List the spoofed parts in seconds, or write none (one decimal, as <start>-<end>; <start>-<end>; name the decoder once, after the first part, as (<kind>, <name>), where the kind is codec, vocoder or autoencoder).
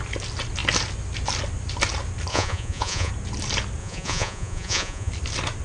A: 2.3-3.1 (vocoder, Vocos); 3.8-5.1